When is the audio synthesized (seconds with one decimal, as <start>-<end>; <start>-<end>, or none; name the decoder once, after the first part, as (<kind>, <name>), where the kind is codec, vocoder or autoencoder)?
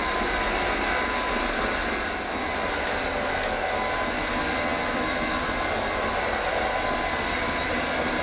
none